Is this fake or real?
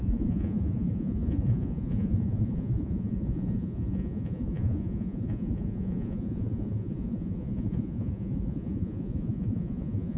fake